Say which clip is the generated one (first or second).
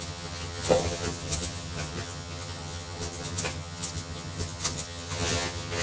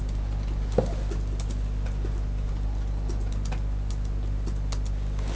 first